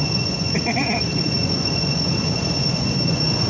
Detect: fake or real fake